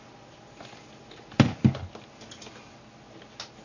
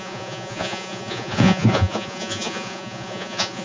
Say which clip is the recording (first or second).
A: first